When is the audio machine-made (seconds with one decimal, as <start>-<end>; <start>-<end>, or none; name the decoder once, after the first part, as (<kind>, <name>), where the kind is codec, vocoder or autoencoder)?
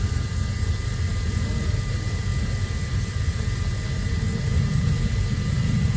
none